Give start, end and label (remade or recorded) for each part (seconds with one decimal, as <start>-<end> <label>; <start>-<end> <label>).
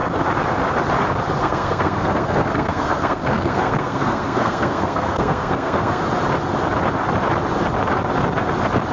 0.0-1.4 recorded; 1.4-6.0 remade; 6.0-8.9 recorded